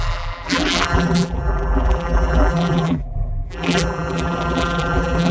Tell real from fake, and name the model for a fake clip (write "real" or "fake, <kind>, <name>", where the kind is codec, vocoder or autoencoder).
fake, vocoder, BigVGAN v2